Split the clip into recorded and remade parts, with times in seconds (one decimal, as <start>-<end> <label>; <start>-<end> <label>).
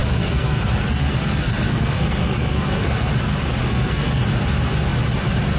0.0-3.1 remade; 3.1-3.6 recorded; 3.6-4.2 remade; 4.2-5.6 recorded